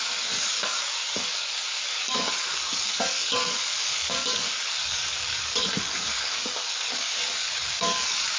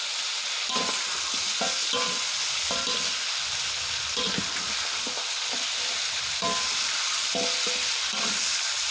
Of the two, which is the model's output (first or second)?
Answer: first